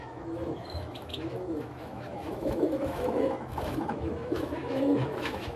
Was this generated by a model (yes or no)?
yes